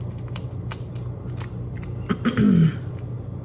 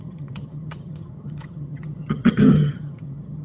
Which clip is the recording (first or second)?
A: first